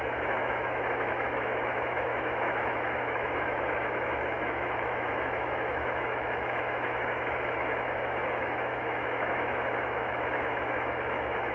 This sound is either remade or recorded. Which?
remade